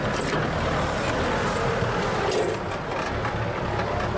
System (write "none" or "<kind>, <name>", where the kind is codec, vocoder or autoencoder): none